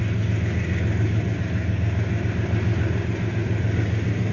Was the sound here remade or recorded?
recorded